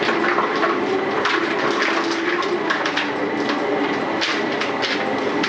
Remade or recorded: recorded